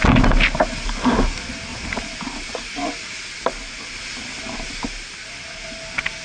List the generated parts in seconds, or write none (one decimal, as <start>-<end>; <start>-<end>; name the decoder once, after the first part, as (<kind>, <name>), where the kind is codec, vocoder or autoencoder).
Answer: 1.7-5.2 (vocoder, BigVGAN v2)